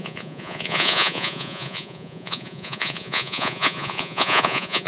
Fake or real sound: fake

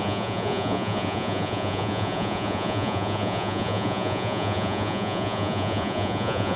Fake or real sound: fake